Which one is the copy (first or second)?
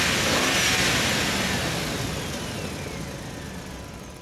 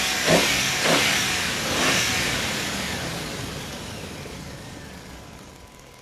second